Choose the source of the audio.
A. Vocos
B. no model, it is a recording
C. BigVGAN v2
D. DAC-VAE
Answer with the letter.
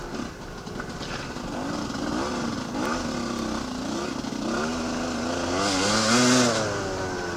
B